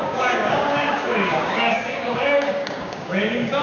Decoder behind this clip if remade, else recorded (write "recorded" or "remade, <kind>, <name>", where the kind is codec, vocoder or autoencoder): remade, codec, DAC